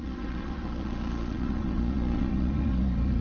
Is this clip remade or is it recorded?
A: remade